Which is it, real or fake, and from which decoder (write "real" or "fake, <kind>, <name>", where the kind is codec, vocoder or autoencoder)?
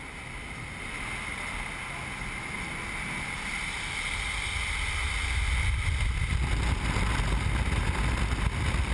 real